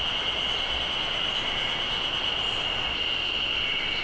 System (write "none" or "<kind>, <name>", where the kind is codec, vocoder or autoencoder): none